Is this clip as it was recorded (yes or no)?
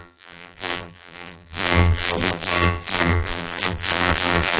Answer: no